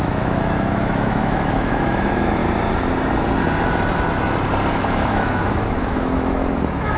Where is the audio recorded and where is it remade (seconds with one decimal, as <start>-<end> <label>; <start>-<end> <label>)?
0.0-2.4 remade; 2.4-4.7 recorded; 4.7-7.0 remade

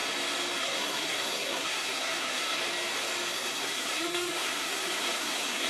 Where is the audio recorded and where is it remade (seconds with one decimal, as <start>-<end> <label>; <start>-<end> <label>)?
0.0-0.6 recorded; 0.6-2.6 remade; 2.6-3.3 recorded; 3.3-5.7 remade

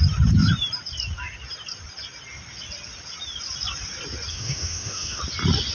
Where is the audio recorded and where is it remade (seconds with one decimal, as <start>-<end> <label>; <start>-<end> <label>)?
0.0-4.3 recorded; 4.3-5.2 remade; 5.2-5.7 recorded